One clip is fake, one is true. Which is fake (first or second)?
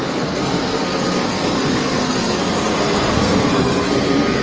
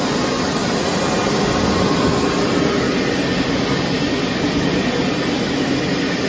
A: first